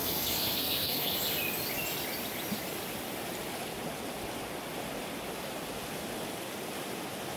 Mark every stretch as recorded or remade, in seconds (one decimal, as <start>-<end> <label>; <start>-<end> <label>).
0.0-1.2 remade; 1.2-7.4 recorded